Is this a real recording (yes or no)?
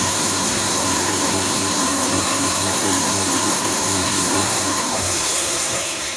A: no